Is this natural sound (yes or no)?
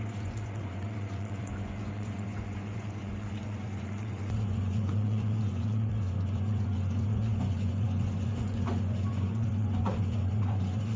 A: no